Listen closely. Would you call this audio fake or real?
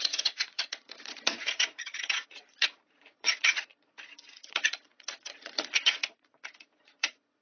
fake